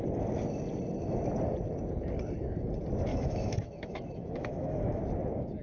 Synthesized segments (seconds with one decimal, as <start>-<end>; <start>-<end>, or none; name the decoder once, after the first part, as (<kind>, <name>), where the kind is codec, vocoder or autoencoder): 3.1-5.0 (autoencoder, DAC-VAE)

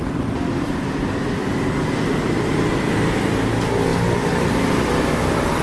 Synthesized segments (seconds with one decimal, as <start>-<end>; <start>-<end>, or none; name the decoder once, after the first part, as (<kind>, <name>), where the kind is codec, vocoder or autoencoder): none

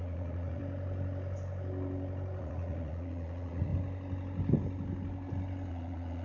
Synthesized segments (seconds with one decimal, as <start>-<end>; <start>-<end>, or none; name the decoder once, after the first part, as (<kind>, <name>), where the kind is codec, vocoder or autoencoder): 0.0-0.6 (vocoder, Vocos); 2.4-3.7; 5.7-6.2

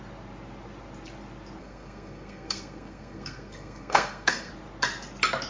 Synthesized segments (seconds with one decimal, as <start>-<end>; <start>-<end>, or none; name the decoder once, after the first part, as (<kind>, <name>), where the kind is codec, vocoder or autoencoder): 1.6-4.5 (codec, SNAC)

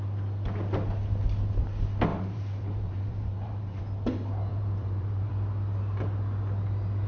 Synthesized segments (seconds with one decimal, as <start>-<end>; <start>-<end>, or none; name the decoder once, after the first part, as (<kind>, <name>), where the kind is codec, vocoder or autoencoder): 2.1-3.8 (vocoder, BigVGAN v2); 4.5-5.3

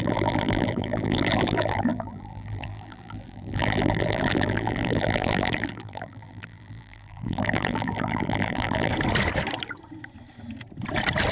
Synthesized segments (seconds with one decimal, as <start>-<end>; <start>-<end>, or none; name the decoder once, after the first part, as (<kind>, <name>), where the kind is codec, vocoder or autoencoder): 0.0-8.9 (vocoder, BigVGAN v2)

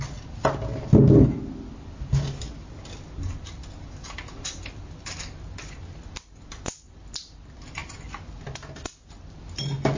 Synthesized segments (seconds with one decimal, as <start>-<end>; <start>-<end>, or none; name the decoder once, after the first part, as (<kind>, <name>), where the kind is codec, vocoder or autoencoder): none

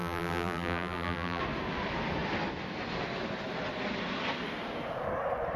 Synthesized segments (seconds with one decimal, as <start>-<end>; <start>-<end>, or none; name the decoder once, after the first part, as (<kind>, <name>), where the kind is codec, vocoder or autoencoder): 0.0-1.4 (vocoder, BigVGAN v2)